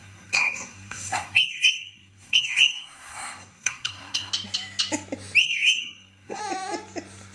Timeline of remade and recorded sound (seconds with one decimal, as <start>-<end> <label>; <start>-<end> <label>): 0.0-4.3 remade; 4.3-5.4 recorded; 5.4-6.4 remade; 6.4-7.3 recorded

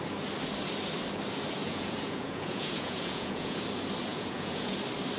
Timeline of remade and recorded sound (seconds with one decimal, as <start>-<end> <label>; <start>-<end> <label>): 0.0-1.6 recorded; 1.6-3.6 remade; 3.6-4.1 recorded; 4.1-4.8 remade; 4.8-5.2 recorded